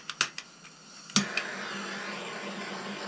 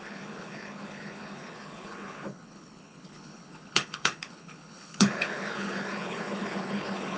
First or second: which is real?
first